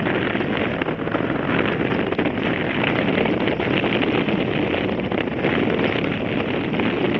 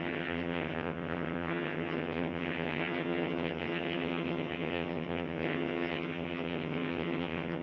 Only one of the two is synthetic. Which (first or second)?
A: second